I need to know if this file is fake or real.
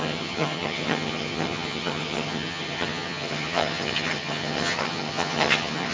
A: fake